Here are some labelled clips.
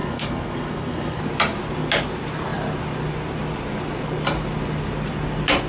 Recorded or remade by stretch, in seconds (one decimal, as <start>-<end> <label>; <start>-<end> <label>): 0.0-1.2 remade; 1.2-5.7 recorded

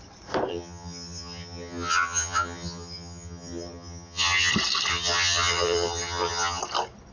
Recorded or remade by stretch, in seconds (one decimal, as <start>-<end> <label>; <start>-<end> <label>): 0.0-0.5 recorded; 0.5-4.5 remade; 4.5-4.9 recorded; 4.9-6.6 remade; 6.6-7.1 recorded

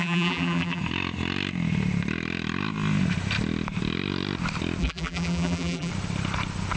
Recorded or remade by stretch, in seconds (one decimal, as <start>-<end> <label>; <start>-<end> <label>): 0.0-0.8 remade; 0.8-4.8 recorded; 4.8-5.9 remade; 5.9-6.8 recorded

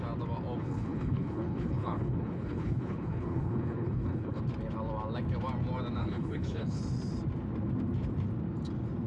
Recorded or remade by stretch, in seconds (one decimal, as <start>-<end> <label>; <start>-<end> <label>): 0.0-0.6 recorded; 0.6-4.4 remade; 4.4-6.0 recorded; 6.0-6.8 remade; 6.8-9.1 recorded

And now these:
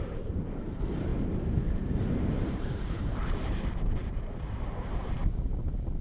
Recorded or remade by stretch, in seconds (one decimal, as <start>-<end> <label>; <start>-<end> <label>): 0.0-1.1 remade; 1.1-1.9 recorded; 1.9-5.2 remade; 5.2-6.0 recorded

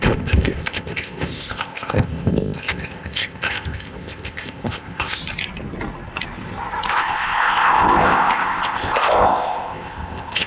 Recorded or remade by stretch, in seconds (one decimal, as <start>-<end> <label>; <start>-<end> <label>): 0.0-5.2 remade; 5.2-6.9 recorded; 6.9-10.5 remade

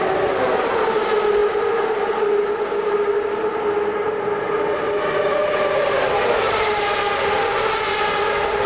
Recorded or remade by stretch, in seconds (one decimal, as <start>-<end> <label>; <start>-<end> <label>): 0.0-8.7 recorded